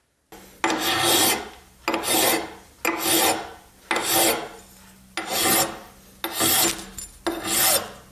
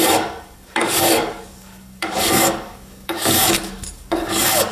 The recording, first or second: first